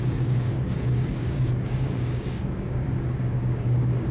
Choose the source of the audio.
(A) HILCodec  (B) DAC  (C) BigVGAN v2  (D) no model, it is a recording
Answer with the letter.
B